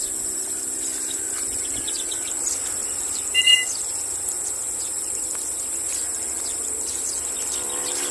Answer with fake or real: fake